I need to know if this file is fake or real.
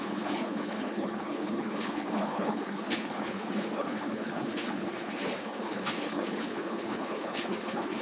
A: fake